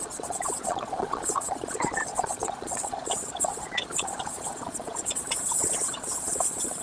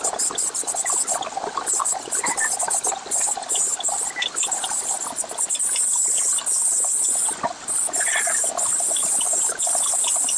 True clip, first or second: second